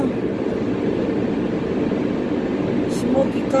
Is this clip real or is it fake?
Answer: real